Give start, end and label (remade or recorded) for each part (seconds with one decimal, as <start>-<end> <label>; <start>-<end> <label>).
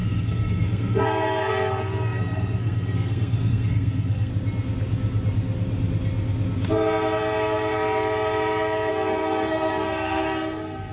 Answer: 0.0-4.3 remade; 4.3-8.9 recorded; 8.9-10.9 remade